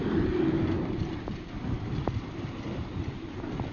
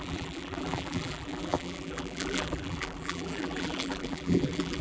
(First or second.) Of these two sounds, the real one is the first